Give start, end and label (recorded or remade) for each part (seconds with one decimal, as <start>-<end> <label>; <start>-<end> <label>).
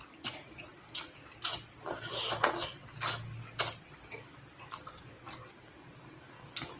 0.0-6.8 recorded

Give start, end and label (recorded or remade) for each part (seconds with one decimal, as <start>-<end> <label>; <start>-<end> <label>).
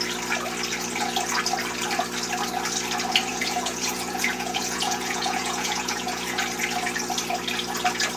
0.0-3.3 recorded; 3.3-6.4 remade; 6.4-8.2 recorded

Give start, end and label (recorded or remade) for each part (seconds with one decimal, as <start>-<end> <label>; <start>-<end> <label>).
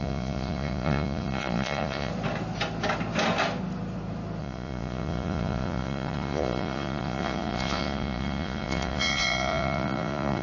0.0-2.1 remade; 2.1-4.4 recorded; 4.4-10.4 remade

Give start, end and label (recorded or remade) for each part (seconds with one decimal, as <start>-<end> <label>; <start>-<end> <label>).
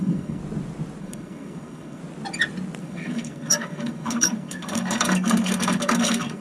0.0-0.4 remade; 0.4-1.0 recorded; 1.0-2.0 remade; 2.0-2.8 recorded; 2.8-6.4 remade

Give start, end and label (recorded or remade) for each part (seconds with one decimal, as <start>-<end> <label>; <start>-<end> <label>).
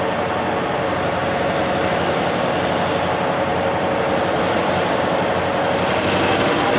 0.0-3.5 recorded; 3.5-5.3 remade; 5.3-6.8 recorded